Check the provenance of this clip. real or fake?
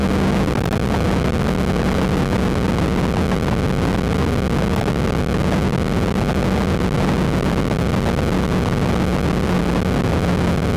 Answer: real